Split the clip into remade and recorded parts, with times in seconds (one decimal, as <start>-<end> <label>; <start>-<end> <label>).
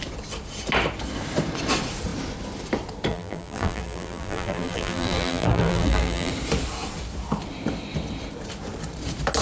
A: 0.0-3.1 recorded; 3.1-6.3 remade; 6.3-9.4 recorded